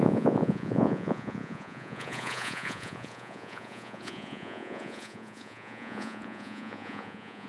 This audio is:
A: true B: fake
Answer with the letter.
B